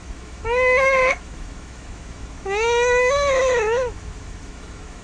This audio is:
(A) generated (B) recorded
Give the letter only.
A